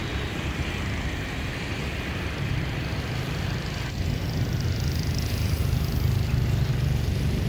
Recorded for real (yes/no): yes